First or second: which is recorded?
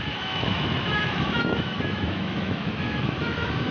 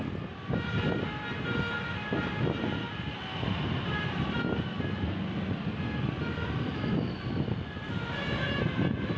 second